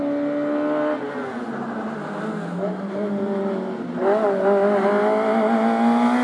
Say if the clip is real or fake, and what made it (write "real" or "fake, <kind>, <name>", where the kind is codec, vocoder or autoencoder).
real